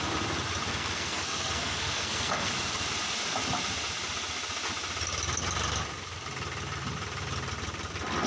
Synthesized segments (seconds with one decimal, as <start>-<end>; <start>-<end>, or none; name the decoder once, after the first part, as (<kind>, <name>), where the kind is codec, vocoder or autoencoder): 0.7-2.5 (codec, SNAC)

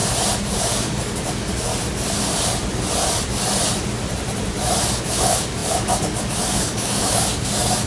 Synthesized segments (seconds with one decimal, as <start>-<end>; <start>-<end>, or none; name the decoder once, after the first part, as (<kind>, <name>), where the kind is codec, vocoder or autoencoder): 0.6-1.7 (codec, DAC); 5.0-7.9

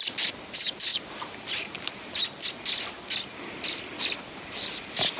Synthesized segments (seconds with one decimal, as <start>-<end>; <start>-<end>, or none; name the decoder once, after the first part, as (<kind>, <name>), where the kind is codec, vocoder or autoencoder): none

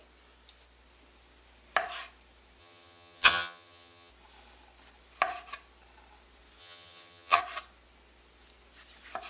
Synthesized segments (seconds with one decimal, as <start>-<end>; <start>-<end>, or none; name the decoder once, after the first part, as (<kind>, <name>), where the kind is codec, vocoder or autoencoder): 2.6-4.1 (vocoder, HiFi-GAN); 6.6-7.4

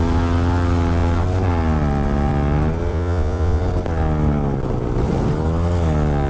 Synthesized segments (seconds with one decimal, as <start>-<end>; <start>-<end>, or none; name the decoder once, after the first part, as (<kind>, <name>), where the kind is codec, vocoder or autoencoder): 2.9-3.6 (vocoder, Vocos)

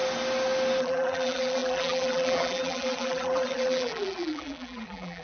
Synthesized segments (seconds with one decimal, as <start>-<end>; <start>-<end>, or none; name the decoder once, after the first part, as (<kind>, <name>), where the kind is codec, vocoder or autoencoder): 0.8-5.2 (vocoder, BigVGAN v2)